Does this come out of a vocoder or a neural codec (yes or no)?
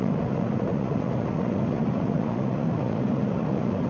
yes